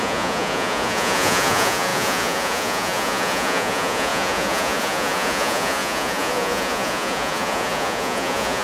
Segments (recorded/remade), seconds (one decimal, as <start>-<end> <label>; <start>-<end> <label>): 0.0-8.6 remade